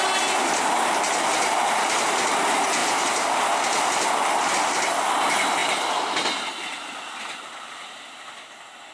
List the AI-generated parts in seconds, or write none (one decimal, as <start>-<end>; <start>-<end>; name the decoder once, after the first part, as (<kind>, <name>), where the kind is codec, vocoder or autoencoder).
none